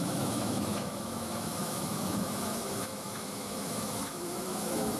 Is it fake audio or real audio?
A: fake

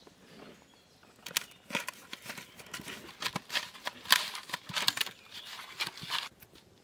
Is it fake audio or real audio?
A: real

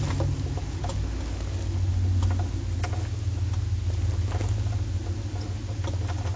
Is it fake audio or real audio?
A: real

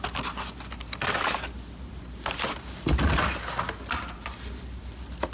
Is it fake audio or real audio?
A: real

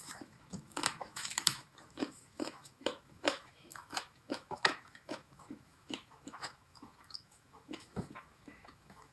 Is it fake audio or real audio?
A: fake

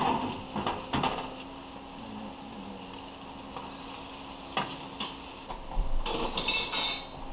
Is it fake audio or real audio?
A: real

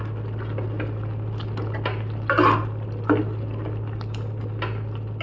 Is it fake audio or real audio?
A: real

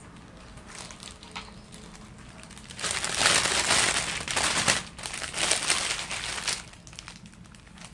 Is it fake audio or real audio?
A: real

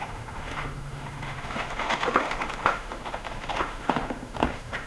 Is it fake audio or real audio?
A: fake